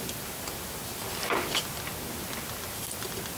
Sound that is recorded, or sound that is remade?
recorded